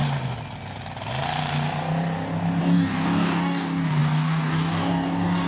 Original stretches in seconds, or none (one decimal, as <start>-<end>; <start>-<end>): 0.0-2.6